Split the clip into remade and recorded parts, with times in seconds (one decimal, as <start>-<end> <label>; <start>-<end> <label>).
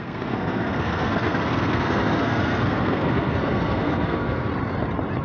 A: 0.0-4.5 remade; 4.5-5.2 recorded